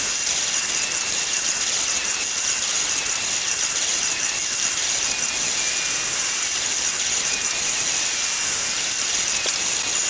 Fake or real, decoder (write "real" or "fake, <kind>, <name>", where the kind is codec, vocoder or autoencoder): real